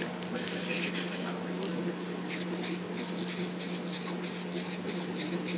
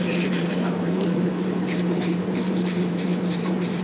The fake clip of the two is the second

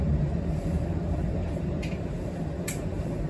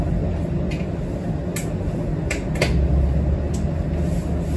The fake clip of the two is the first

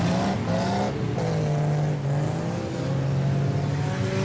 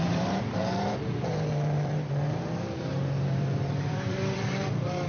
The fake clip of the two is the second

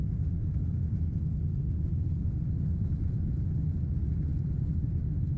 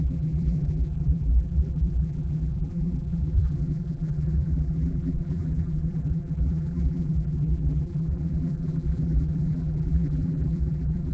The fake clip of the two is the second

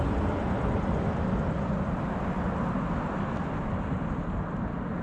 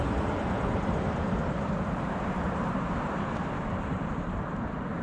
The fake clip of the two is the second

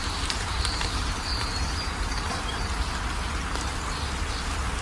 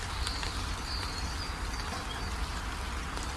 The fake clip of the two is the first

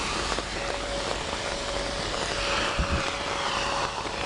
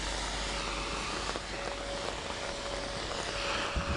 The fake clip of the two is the first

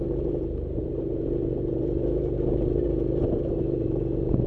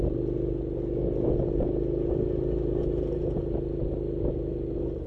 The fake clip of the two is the first